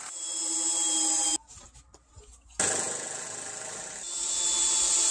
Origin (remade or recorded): recorded